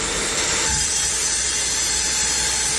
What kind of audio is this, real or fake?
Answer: fake